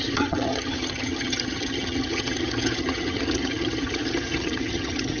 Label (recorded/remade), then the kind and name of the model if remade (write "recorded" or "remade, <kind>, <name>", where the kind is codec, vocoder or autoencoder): remade, vocoder, HiFi-GAN